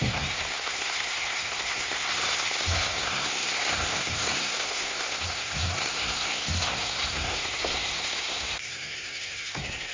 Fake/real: fake